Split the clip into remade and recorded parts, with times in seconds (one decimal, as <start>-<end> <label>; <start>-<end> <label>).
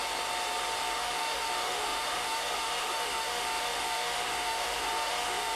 0.0-0.8 recorded; 0.8-5.6 remade